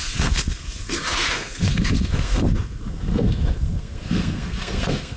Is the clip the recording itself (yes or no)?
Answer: no